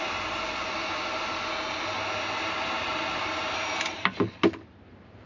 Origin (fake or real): real